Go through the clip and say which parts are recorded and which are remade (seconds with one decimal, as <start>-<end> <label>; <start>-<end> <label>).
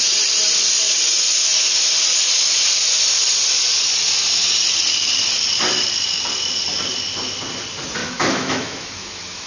0.0-8.0 recorded; 8.0-9.5 remade